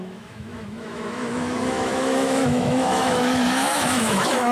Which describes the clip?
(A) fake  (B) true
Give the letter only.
A